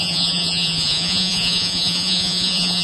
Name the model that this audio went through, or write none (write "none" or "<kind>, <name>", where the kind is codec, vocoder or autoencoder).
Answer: vocoder, Vocos